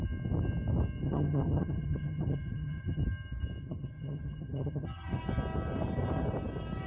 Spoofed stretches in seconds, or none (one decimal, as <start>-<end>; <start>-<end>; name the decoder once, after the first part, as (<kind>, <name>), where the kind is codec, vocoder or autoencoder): 1.0-3.0 (vocoder, HiFi-GAN); 3.6-5.2